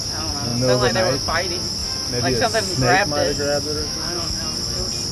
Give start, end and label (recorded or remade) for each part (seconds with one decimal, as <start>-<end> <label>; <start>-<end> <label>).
0.0-3.8 recorded; 3.8-4.4 remade; 4.4-5.1 recorded